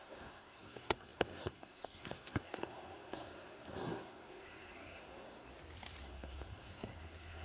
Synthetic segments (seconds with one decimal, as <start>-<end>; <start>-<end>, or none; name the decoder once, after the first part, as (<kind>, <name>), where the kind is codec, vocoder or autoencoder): 0.0-5.5 (codec, SNAC); 6.0-7.4